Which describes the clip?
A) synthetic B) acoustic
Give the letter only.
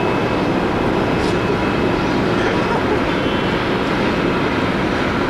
B